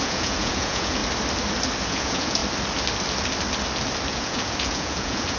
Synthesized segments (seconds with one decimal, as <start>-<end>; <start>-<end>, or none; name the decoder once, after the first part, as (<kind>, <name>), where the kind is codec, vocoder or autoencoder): 0.0-1.0 (vocoder, Vocos); 1.9-2.4; 4.1-5.4